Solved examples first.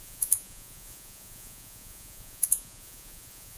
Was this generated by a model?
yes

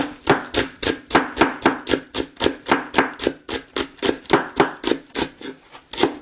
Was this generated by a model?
no